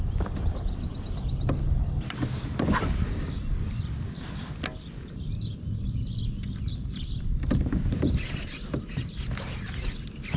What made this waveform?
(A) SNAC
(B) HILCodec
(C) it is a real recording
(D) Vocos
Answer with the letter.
C